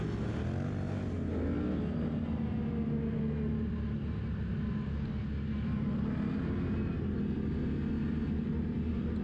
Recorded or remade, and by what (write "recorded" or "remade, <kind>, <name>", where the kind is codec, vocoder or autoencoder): recorded